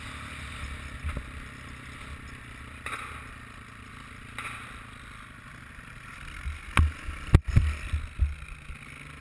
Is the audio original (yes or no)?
yes